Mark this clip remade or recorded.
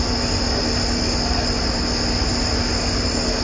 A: recorded